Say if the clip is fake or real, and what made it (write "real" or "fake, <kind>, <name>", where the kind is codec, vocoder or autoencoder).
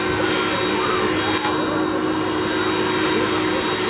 real